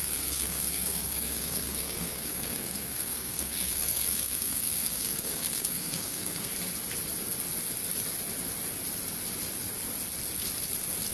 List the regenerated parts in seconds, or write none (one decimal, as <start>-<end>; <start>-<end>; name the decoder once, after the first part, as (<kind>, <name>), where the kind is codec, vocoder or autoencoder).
0.0-6.5 (codec, SNAC)